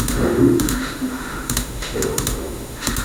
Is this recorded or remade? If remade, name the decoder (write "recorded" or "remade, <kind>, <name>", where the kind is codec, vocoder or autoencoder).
remade, autoencoder, DAC-VAE